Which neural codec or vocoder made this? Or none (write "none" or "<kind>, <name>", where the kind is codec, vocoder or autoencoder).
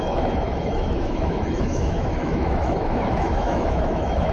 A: autoencoder, DAC-VAE